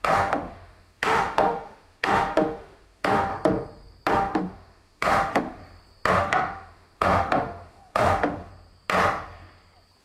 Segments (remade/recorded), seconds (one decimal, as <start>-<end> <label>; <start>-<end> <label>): 0.0-3.3 remade; 3.3-4.1 recorded; 4.1-5.6 remade; 5.6-6.1 recorded; 6.1-8.5 remade; 8.5-10.0 recorded